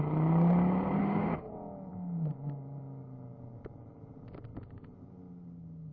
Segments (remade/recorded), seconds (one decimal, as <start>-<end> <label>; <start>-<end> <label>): 0.0-1.0 recorded; 1.0-1.5 remade; 1.5-5.9 recorded